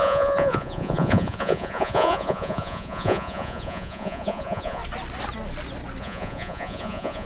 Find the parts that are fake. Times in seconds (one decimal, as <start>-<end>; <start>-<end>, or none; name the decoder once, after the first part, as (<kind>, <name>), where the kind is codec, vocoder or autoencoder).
0.0-4.8 (vocoder, Vocos); 6.0-7.3